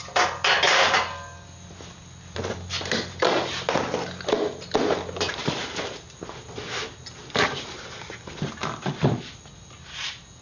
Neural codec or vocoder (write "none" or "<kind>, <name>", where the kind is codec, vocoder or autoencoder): none